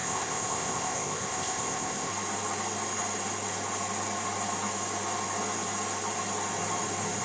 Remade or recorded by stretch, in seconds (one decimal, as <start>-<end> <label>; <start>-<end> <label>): 0.0-2.1 remade; 2.1-7.2 recorded